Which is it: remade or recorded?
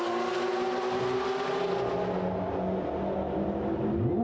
recorded